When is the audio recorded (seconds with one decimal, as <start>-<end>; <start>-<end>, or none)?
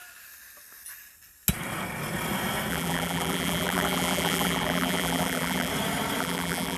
0.0-2.7; 5.7-6.2